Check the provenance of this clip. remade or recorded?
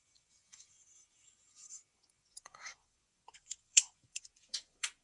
remade